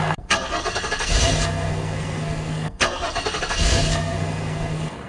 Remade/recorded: remade